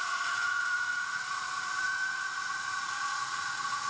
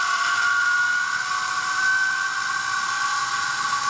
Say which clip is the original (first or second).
second